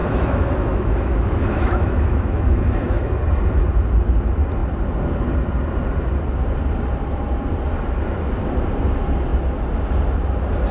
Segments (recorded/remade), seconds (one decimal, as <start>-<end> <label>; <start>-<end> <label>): 0.0-3.2 remade; 3.2-10.7 recorded